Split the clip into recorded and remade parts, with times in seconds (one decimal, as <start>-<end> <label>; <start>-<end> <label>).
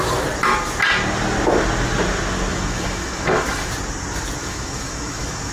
0.0-2.5 recorded; 2.5-3.7 remade; 3.7-4.4 recorded; 4.4-5.5 remade